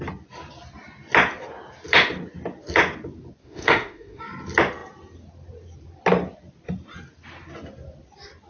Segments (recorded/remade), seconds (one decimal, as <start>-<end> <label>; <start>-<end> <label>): 0.0-3.4 recorded; 3.4-4.2 remade; 4.2-8.5 recorded